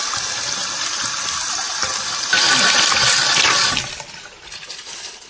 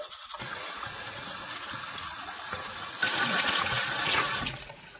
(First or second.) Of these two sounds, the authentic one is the first